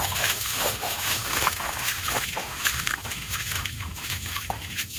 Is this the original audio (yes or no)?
no